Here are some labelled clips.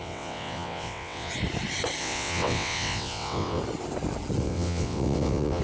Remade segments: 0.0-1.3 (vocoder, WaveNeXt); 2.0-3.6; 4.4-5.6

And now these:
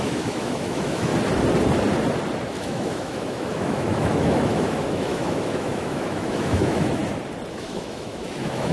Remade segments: 0.0-1.1 (autoencoder, DAC-VAE); 2.6-7.0; 7.5-8.7

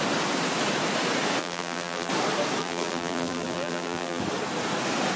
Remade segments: 1.4-2.1 (vocoder, BigVGAN v2); 2.6-4.2

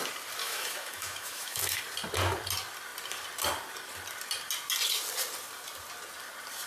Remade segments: 0.4-1.8 (autoencoder, DAC-VAE)

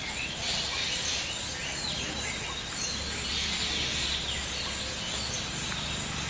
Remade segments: none

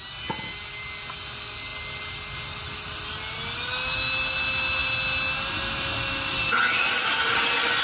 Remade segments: none

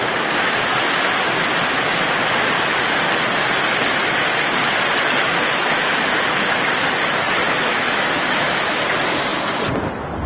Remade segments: 5.2-6.1 (autoencoder, DAC-VAE); 7.4-8.8